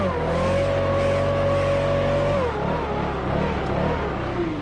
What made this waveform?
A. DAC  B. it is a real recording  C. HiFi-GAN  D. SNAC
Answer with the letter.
B